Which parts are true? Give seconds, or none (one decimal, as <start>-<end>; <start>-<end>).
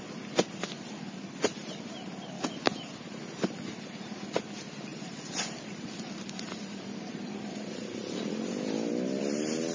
0.0-4.9; 7.1-9.7